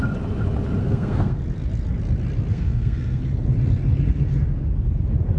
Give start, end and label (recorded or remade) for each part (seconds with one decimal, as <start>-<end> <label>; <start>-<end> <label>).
0.0-0.8 recorded; 0.8-1.4 remade; 1.4-2.5 recorded; 2.5-3.2 remade; 3.2-5.4 recorded